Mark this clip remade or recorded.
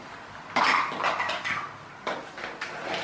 recorded